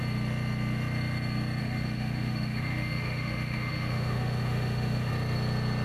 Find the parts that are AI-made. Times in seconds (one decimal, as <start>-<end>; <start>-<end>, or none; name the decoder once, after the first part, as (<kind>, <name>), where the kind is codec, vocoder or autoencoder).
1.6-5.1 (autoencoder, DAC-VAE)